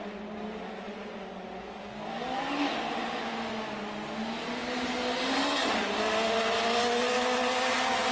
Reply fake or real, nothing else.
real